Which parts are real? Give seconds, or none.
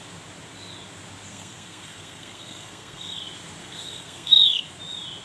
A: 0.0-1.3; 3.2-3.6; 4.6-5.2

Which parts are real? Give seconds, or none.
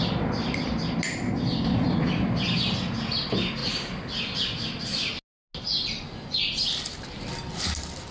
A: 0.0-8.1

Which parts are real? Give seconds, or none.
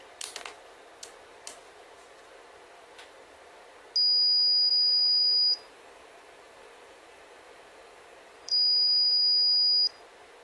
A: 0.0-4.7; 9.2-10.4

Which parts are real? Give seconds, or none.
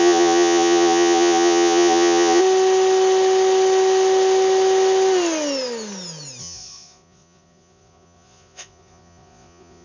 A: 2.4-6.4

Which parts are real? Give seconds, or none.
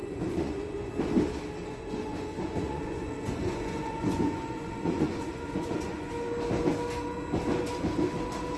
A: 0.9-1.6; 6.1-8.6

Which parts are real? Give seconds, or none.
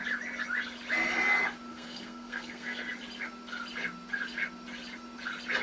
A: 0.0-1.7; 2.8-5.6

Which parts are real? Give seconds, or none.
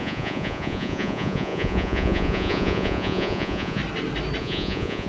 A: 3.8-4.4